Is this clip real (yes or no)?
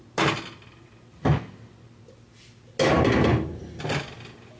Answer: yes